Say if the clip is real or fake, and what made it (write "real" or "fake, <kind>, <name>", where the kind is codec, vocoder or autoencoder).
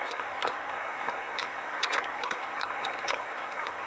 fake, codec, SNAC